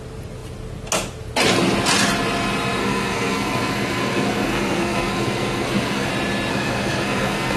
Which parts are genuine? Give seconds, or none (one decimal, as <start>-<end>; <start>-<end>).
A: 0.0-2.8; 6.1-6.5